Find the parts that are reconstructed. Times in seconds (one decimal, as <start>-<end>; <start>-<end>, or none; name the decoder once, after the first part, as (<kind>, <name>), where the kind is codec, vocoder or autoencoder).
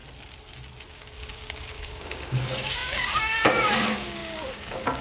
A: 0.9-5.0 (codec, DAC)